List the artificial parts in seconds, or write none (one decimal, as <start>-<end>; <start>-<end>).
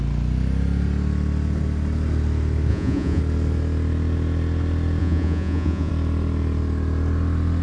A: 2.7-3.2; 5.0-5.9